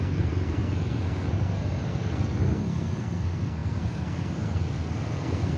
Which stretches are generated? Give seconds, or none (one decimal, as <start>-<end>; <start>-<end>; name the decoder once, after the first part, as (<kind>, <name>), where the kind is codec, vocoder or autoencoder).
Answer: 0.0-5.6 (codec, SNAC)